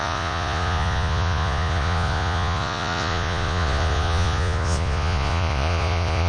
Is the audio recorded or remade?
remade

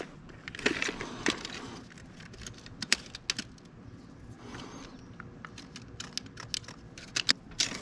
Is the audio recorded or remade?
recorded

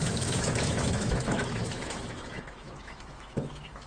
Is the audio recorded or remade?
remade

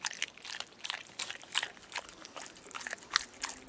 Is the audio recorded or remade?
recorded